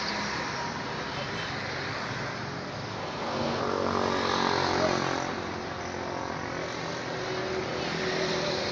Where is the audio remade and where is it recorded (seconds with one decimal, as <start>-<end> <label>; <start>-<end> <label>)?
0.0-3.0 recorded; 3.0-3.6 remade; 3.6-8.7 recorded